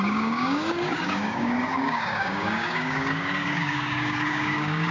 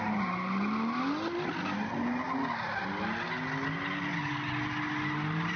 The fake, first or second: first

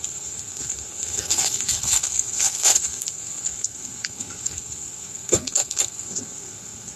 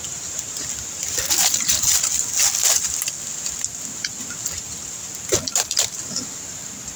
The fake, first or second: first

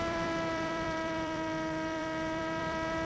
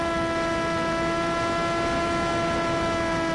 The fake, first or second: first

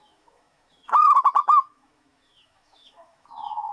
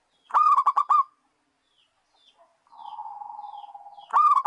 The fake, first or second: first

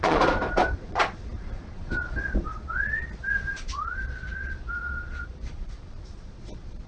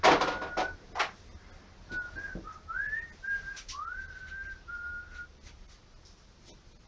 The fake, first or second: first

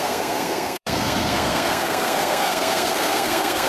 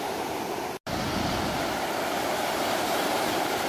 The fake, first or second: first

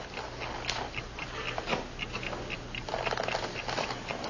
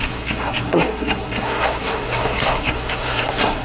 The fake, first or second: second